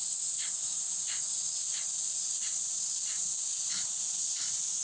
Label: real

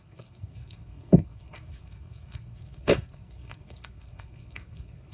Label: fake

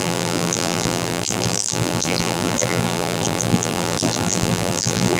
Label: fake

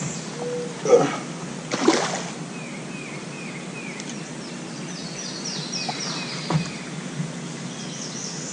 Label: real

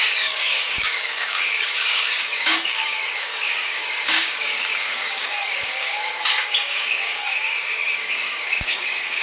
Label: fake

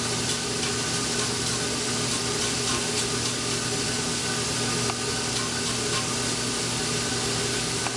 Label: real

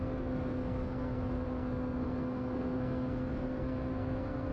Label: fake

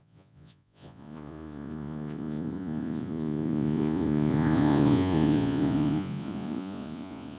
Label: fake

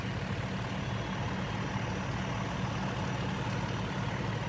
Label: real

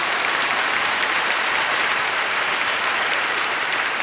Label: fake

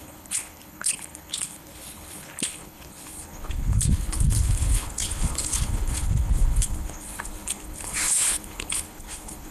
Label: fake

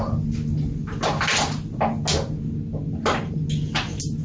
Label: real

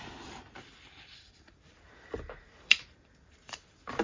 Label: fake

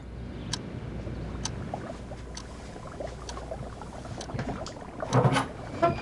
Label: real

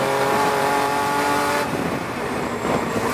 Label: fake